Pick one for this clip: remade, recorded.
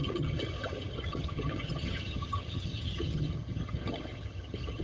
remade